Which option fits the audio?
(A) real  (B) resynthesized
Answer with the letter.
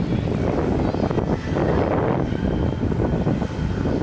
A